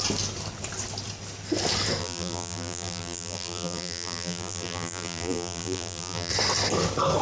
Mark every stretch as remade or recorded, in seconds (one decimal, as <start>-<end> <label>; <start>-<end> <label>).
0.0-2.0 recorded; 2.0-6.3 remade; 6.3-7.2 recorded